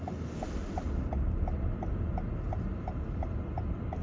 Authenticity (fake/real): real